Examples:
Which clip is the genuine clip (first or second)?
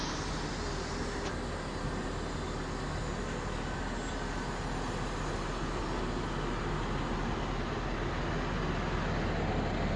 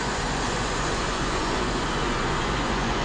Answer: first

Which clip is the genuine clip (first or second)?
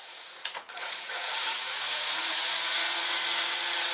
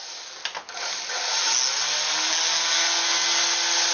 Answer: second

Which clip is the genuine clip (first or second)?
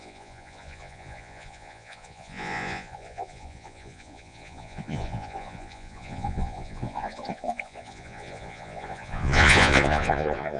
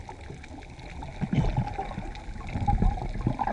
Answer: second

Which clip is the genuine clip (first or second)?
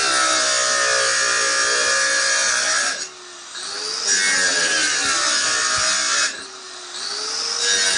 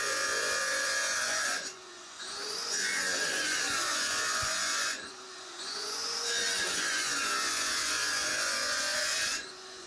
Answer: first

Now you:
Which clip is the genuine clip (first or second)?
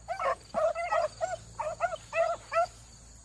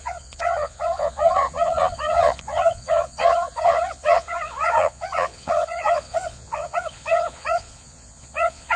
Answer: first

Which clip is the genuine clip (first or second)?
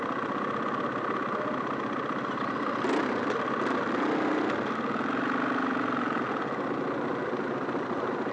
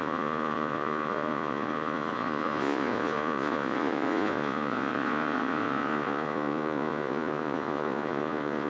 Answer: first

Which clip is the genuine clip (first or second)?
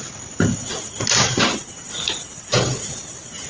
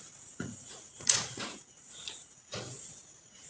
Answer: first